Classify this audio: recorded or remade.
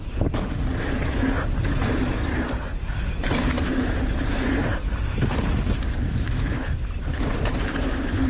remade